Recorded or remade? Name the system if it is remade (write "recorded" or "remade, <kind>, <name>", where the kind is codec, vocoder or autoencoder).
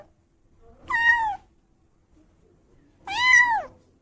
recorded